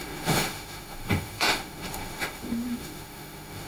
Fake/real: fake